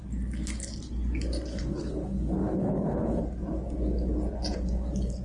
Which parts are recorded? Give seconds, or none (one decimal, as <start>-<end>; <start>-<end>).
0.0-1.5; 3.2-5.2